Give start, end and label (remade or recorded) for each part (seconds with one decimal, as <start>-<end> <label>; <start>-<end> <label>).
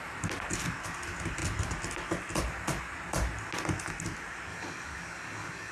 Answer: 0.0-4.5 recorded; 4.5-5.7 remade